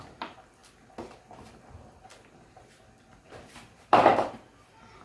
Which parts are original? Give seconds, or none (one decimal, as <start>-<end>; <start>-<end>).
0.6-1.7